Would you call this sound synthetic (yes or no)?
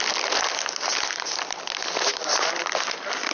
no